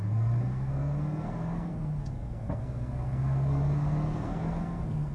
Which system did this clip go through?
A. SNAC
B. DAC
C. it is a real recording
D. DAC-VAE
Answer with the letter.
A